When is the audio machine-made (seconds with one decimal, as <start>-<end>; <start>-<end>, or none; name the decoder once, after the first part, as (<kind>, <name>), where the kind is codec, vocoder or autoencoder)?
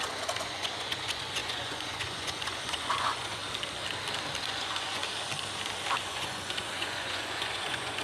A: 0.0-3.4 (vocoder, Vocos); 4.4-5.0; 6.0-8.0